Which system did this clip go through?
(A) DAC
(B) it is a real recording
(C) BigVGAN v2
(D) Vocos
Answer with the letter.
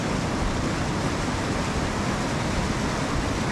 B